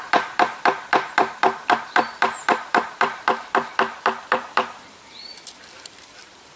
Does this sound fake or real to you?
fake